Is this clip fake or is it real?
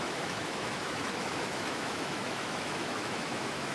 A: fake